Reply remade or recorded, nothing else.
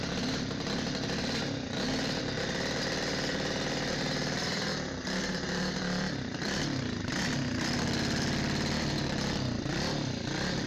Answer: remade